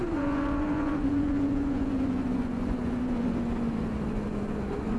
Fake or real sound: fake